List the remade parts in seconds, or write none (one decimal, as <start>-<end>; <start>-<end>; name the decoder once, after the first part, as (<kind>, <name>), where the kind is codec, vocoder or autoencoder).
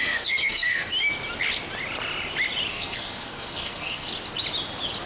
0.0-0.9 (codec, SNAC); 2.7-4.1